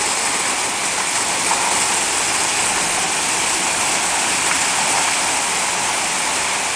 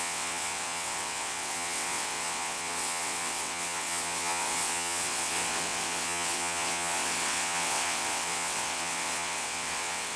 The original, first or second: first